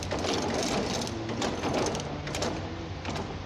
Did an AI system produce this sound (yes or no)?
no